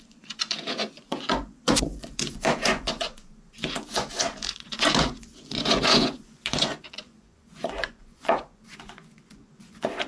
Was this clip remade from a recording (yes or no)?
yes